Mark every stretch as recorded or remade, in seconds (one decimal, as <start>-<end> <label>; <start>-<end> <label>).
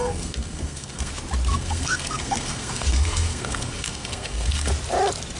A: 0.0-1.1 remade; 1.1-1.5 recorded; 1.5-4.7 remade; 4.7-5.4 recorded